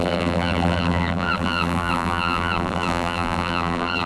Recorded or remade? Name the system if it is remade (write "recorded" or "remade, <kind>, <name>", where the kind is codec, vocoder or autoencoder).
remade, vocoder, BigVGAN v2